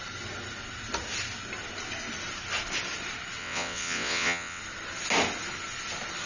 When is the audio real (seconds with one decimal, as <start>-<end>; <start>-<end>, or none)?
0.0-3.4; 4.6-6.3